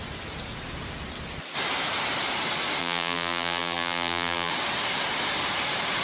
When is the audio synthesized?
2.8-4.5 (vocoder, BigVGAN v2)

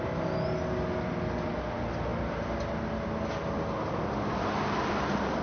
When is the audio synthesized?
none

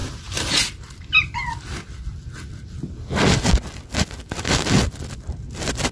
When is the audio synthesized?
none

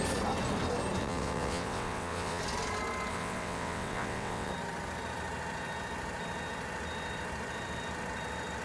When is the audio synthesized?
1.0-2.4 (vocoder, WaveNeXt); 3.1-4.5

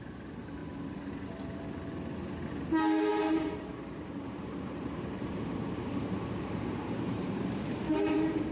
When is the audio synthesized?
0.6-1.1 (vocoder, BigVGAN v2); 3.1-8.5

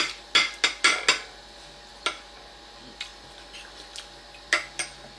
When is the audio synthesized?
none

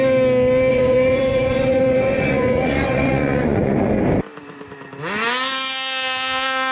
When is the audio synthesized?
0.7-4.0 (vocoder, Vocos)

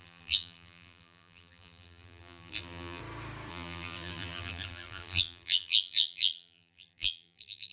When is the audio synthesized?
0.0-3.0 (vocoder, BigVGAN v2); 3.5-7.7